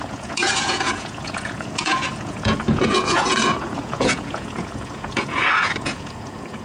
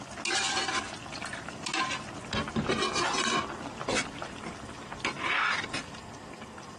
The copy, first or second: first